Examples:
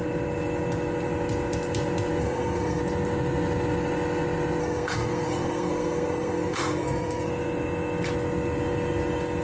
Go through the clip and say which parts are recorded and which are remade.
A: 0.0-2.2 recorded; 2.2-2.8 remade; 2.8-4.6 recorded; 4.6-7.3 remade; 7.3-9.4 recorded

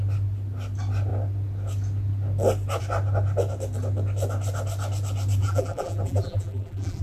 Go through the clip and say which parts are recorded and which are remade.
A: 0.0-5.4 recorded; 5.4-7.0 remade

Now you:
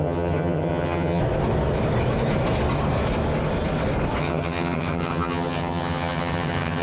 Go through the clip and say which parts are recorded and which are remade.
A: 0.0-1.2 remade; 1.2-4.2 recorded; 4.2-6.8 remade

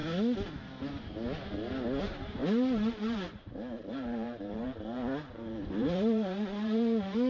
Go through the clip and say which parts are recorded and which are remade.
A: 0.0-2.0 recorded; 2.0-7.3 remade

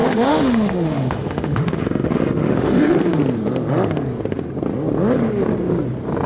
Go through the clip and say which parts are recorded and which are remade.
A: 0.0-3.0 remade; 3.0-6.3 recorded